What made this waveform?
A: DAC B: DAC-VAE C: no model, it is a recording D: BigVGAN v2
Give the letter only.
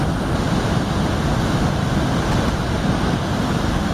C